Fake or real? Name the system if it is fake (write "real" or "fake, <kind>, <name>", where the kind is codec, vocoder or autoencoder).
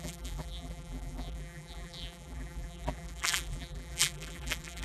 fake, vocoder, BigVGAN v2